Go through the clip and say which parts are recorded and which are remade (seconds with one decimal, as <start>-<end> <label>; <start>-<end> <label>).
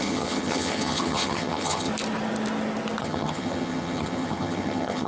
0.0-1.9 remade; 1.9-3.0 recorded; 3.0-5.1 remade